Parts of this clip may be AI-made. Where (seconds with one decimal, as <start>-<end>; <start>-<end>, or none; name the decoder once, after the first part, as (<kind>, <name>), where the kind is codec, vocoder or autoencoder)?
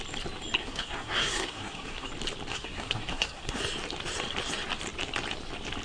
0.6-2.1 (codec, SNAC); 2.5-3.6